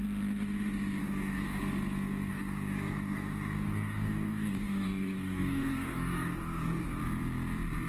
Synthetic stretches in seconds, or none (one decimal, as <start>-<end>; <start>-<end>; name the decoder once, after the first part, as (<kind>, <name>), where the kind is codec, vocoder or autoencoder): 1.0-1.6 (codec, DAC); 2.3-7.0